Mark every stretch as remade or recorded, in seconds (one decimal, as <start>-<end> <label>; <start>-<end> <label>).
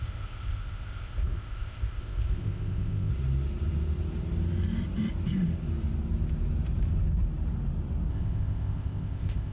0.0-3.1 remade; 3.1-8.1 recorded; 8.1-9.5 remade